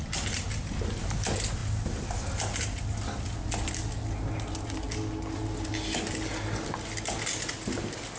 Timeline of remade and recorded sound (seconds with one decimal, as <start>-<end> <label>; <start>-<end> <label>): 0.0-8.2 recorded